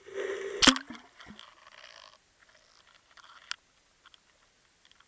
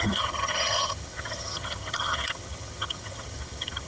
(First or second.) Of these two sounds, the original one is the first